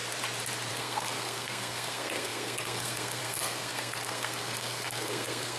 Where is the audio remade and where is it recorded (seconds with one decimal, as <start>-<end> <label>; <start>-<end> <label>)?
0.0-0.7 recorded; 0.7-5.6 remade

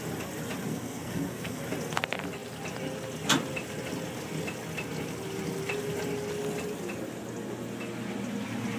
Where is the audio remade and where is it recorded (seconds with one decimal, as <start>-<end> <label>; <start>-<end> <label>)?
0.0-0.7 recorded; 0.7-1.6 remade; 1.6-8.8 recorded

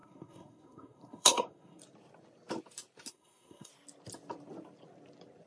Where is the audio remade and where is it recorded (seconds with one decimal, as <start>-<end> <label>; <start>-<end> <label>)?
0.0-1.8 remade; 1.8-3.1 recorded; 3.1-3.7 remade; 3.7-5.5 recorded

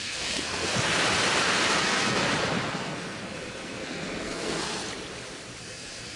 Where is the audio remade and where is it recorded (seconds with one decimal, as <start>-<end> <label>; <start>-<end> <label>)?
0.0-0.7 remade; 0.7-1.8 recorded; 1.8-2.2 remade; 2.2-2.7 recorded; 2.7-4.8 remade; 4.8-5.6 recorded; 5.6-6.2 remade

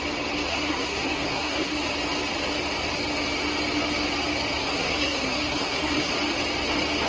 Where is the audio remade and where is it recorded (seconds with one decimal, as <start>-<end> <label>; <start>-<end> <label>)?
0.0-0.5 recorded; 0.5-1.8 remade; 1.8-4.6 recorded; 4.6-6.1 remade; 6.1-7.1 recorded

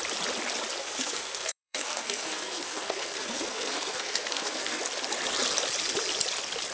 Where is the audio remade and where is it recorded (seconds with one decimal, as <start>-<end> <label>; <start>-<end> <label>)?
0.0-0.8 recorded; 0.8-4.8 remade; 4.8-6.7 recorded